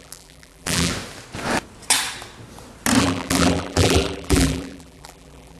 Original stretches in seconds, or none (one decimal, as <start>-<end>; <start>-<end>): 0.9-3.0